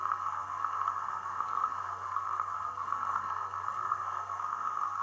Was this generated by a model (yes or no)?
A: yes